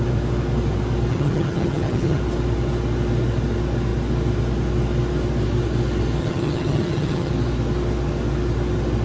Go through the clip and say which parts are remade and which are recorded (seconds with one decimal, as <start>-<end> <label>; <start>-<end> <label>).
0.0-1.1 recorded; 1.1-2.2 remade; 2.2-6.2 recorded; 6.2-7.3 remade; 7.3-9.0 recorded